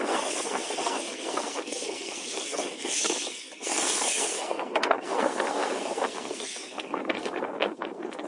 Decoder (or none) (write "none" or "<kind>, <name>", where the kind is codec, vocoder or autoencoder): codec, SNAC